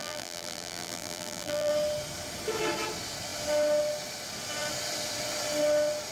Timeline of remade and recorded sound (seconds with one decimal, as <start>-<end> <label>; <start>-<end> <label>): 0.0-1.7 remade; 1.7-6.1 recorded